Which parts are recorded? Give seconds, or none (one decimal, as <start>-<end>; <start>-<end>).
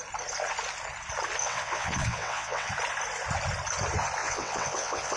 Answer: 0.0-1.4; 2.7-4.2